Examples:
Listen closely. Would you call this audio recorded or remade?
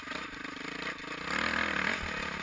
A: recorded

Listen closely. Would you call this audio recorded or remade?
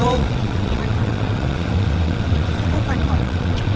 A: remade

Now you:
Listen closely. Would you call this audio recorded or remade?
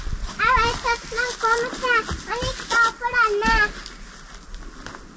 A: recorded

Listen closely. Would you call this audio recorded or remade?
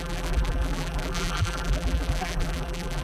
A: remade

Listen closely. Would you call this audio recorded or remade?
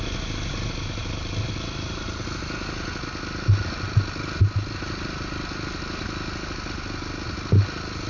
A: recorded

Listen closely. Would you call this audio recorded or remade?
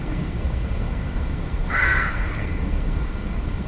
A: remade